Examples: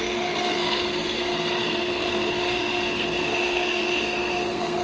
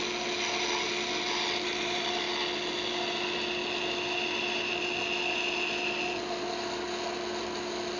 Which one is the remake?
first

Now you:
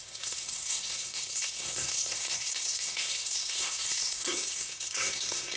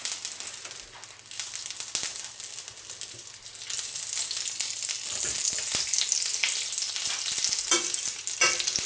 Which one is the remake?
first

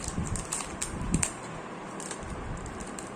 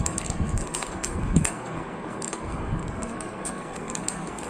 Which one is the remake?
second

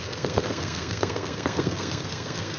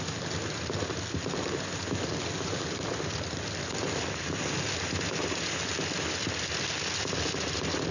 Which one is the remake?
first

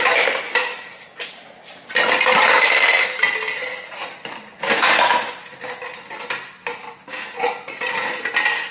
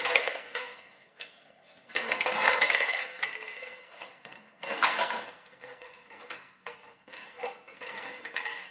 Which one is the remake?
second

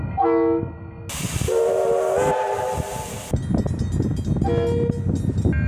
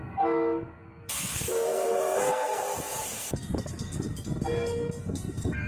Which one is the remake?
second